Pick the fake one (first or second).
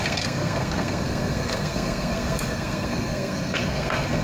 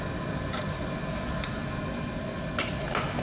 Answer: first